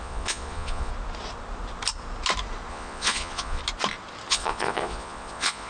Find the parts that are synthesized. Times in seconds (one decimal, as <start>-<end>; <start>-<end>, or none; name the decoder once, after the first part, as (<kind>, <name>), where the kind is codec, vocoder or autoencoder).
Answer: 0.0-0.9 (vocoder, Vocos); 2.7-3.6; 4.3-5.7